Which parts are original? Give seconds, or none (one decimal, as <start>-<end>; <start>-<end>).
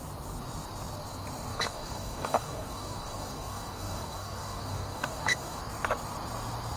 0.0-1.5; 5.6-6.8